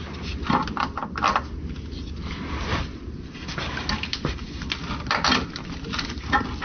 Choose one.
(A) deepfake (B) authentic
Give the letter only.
B